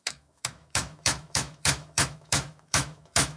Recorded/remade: remade